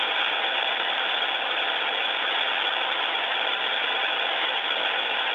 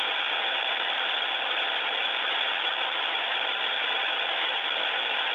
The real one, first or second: first